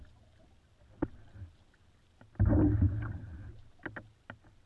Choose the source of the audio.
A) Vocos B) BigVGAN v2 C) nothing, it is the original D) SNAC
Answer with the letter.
C